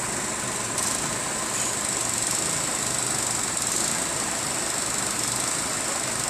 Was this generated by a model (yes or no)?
no